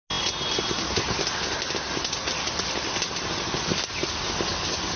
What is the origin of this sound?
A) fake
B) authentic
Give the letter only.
B